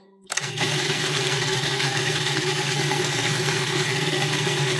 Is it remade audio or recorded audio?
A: remade